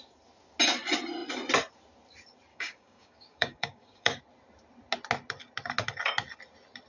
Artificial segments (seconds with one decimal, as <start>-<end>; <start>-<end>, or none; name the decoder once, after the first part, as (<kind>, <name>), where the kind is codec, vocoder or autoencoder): 2.5-4.2 (codec, DAC)